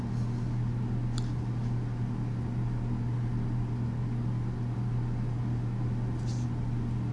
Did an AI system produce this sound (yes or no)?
no